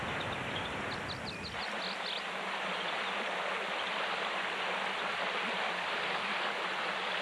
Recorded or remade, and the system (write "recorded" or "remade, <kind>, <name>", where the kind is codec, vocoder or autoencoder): recorded